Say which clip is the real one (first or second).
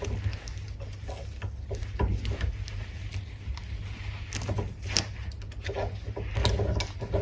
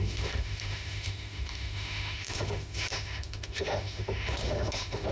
first